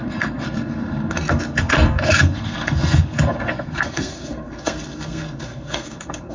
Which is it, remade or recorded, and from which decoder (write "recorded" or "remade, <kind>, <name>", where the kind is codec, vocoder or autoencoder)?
remade, codec, SNAC